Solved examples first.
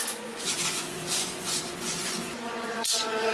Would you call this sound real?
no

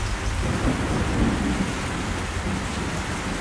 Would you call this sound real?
yes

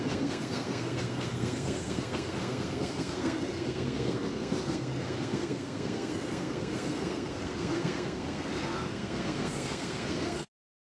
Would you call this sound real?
no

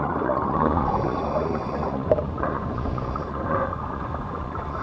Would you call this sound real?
no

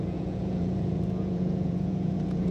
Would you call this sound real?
no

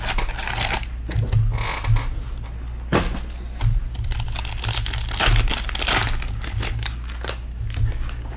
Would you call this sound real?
yes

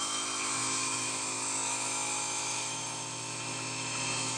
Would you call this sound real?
no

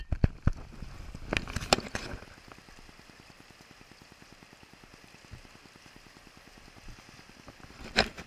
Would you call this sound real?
yes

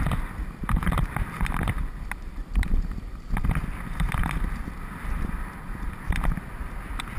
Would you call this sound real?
no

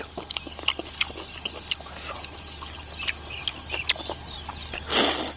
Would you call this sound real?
yes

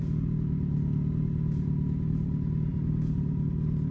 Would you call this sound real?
yes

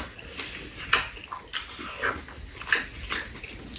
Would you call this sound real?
yes